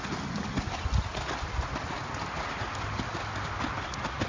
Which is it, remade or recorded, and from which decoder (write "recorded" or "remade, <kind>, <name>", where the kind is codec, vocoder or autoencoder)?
recorded